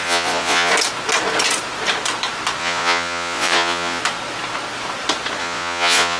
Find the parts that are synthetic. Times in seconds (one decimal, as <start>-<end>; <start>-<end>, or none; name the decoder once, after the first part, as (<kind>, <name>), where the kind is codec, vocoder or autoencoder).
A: 0.0-0.7 (vocoder, Vocos); 2.6-4.0; 5.4-6.2